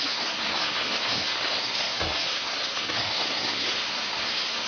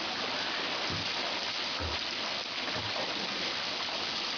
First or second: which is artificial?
first